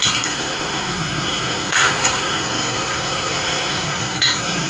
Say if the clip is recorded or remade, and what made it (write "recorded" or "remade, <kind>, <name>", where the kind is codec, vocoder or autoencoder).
remade, codec, SNAC